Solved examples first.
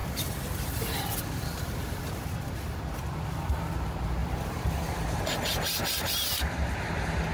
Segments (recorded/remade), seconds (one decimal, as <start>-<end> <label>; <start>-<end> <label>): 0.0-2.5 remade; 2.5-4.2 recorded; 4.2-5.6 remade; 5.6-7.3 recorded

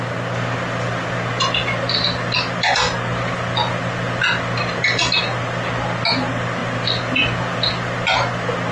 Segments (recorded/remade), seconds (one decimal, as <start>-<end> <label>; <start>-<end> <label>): 0.0-8.7 recorded

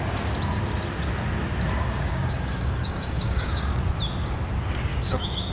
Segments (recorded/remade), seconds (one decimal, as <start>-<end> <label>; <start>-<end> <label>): 0.0-1.8 recorded; 1.8-3.8 remade; 3.8-4.9 recorded; 4.9-5.5 remade

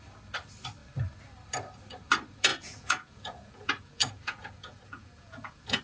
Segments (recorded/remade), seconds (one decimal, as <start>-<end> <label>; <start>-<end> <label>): 0.0-2.5 recorded; 2.5-5.8 remade

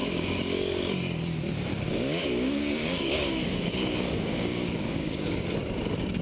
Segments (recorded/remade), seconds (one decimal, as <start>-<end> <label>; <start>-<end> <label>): 0.0-0.8 remade; 0.8-1.7 recorded; 1.7-5.4 remade; 5.4-6.2 recorded

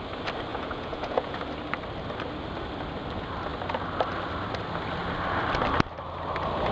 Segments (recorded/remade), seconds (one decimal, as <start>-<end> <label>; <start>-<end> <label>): 0.0-0.5 recorded; 0.5-1.4 remade; 1.4-6.7 recorded

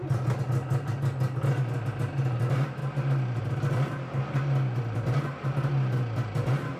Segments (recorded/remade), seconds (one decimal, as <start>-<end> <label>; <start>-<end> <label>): 0.0-6.8 recorded

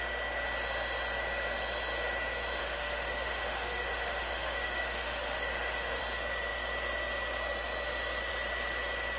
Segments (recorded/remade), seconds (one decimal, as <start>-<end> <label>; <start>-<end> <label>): 0.0-2.6 recorded; 2.6-6.0 remade; 6.0-9.2 recorded